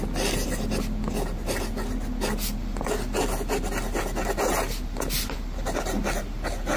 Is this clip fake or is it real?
real